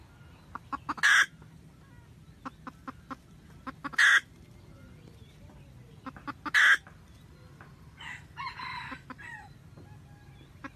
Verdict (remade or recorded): recorded